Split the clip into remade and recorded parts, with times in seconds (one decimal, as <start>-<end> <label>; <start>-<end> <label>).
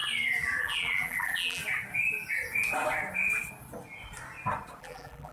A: 0.0-0.6 recorded; 0.6-1.6 remade; 1.6-4.8 recorded; 4.8-5.3 remade